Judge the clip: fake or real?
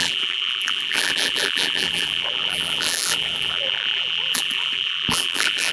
fake